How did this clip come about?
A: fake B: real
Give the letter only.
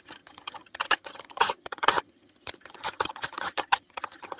A